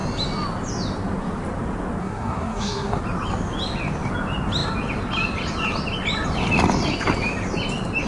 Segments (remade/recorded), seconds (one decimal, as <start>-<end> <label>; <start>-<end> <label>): 0.0-2.0 recorded; 2.0-3.0 remade; 3.0-8.1 recorded